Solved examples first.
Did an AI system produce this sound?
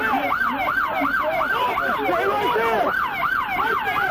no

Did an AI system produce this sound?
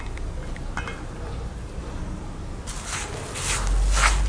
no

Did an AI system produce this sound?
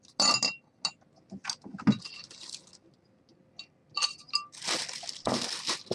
no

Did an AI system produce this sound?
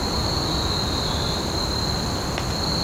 no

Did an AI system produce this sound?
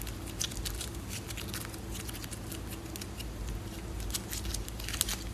no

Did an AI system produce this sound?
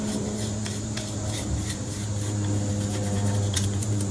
yes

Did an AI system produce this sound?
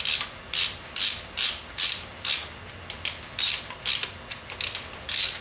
no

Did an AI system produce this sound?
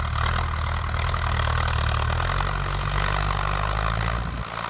no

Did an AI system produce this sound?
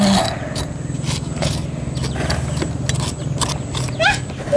no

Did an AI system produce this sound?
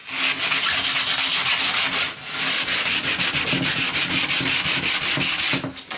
no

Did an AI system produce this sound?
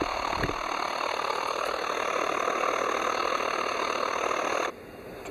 no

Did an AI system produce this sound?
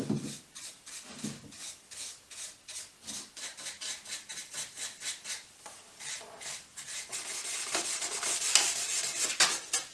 no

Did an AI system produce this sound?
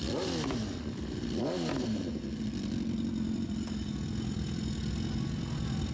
no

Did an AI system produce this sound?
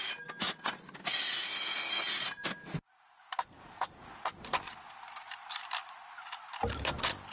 no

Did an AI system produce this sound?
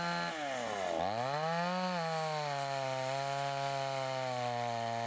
no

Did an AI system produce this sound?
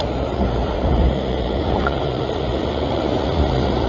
yes